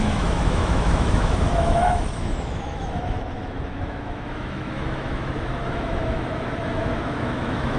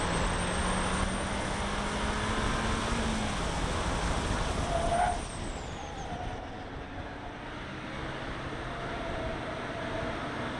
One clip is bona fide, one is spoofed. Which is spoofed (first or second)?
first